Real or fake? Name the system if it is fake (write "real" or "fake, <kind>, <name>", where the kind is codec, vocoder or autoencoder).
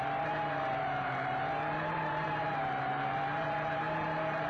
fake, vocoder, BigVGAN v2